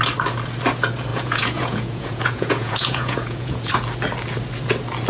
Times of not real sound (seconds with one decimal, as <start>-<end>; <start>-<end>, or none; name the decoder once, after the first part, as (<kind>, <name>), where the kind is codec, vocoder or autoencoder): 1.1-3.7 (vocoder, Vocos)